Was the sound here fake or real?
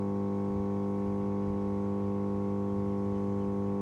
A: real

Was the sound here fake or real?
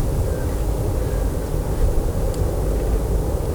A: real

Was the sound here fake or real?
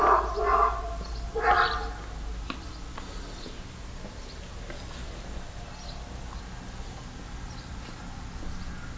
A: real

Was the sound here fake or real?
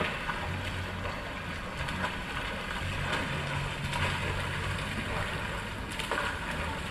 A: real